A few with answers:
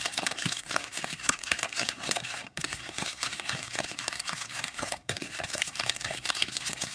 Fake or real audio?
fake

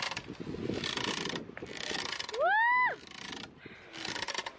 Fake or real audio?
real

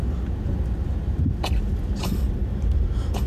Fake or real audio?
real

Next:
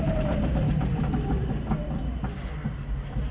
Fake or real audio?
real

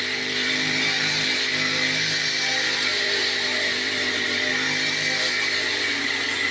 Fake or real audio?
fake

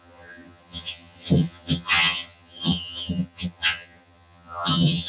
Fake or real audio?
fake